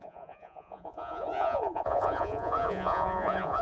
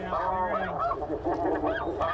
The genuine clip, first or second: second